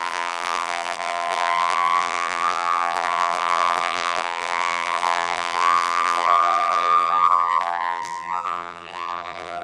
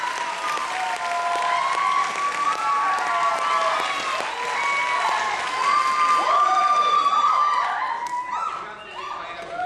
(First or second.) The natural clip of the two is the second